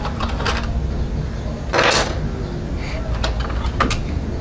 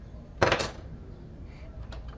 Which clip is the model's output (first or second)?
second